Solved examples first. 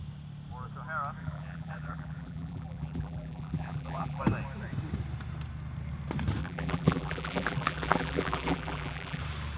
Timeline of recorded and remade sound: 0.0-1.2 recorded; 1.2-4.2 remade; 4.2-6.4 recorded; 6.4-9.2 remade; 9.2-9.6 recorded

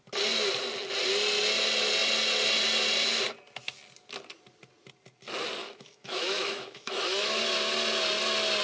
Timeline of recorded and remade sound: 0.0-5.6 recorded; 5.6-7.4 remade; 7.4-8.6 recorded

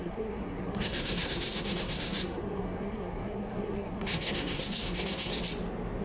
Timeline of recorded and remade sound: 0.0-5.3 remade; 5.3-6.0 recorded

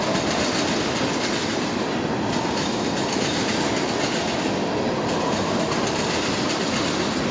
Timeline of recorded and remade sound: 0.0-7.3 recorded

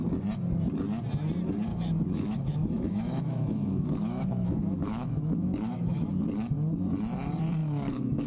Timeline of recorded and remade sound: 0.0-1.7 recorded; 1.7-6.1 remade; 6.1-7.6 recorded; 7.6-8.3 remade

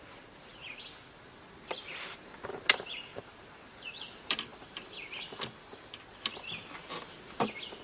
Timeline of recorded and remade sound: 0.0-0.5 remade; 0.5-2.7 recorded; 2.7-4.5 remade; 4.5-7.8 recorded

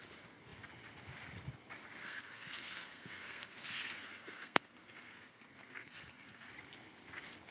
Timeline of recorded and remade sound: 0.0-2.0 recorded; 2.0-6.5 remade; 6.5-7.5 recorded

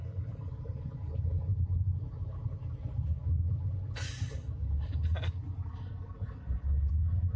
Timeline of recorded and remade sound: 0.0-1.5 recorded; 1.5-2.6 remade; 2.6-7.4 recorded